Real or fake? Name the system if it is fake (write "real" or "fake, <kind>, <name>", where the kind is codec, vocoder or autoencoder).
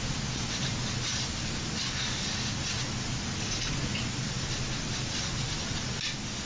real